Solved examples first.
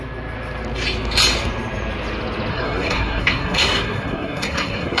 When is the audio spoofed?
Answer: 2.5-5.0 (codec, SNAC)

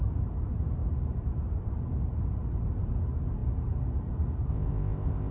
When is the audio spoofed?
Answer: 4.5-5.3 (codec, ZipCodec)

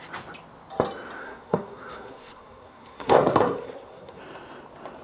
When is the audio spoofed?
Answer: 1.2-4.2 (codec, SNAC)

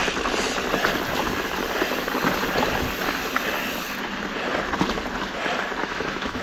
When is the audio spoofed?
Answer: 5.8-6.4 (autoencoder, DAC-VAE)

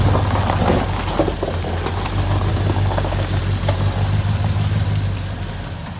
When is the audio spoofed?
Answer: 2.5-3.4 (codec, DAC)

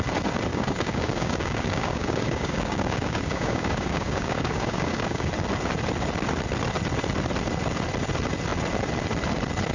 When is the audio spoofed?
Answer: 0.5-5.3 (codec, DAC)